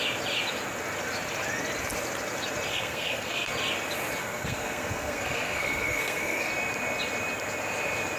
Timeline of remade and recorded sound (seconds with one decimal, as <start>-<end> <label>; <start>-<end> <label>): 0.0-2.7 recorded; 2.7-3.5 remade; 3.5-4.2 recorded; 4.2-6.5 remade; 6.5-8.2 recorded